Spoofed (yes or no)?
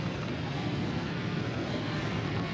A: yes